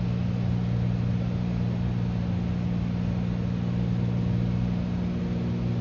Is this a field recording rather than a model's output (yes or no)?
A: yes